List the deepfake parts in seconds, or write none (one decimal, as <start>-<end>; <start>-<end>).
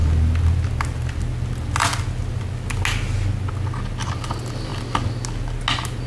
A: none